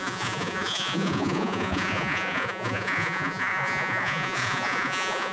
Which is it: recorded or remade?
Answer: remade